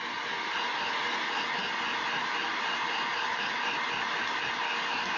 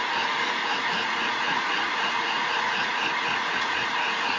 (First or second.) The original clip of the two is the first